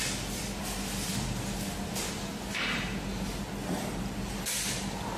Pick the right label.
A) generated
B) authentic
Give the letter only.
B